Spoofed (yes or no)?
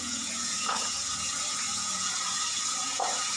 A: yes